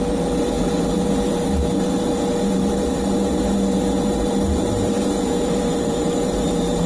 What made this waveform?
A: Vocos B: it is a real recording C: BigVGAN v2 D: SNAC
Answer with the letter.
C